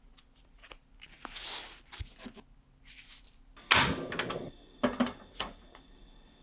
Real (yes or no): yes